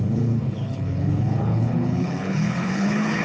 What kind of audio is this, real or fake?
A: fake